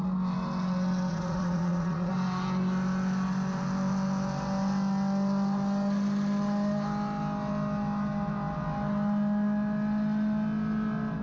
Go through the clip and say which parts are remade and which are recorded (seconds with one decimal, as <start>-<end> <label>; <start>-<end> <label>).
0.0-1.1 recorded; 1.1-2.1 remade; 2.1-11.2 recorded